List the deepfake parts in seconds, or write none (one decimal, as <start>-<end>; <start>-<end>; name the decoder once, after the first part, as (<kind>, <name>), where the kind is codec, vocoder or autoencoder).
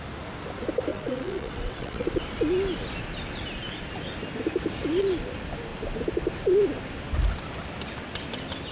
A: 0.9-2.2 (vocoder, WaveNeXt)